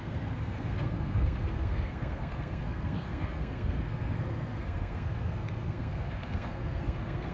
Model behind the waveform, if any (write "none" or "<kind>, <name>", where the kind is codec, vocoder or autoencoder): codec, SNAC